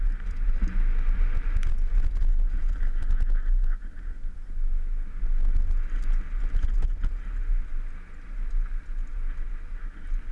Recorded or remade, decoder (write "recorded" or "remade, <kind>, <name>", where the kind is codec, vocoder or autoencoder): recorded